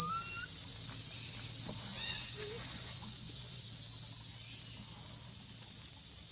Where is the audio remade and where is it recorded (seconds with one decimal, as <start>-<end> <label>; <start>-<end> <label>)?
0.0-1.9 recorded; 1.9-3.6 remade; 3.6-6.3 recorded